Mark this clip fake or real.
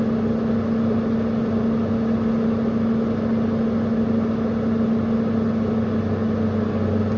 real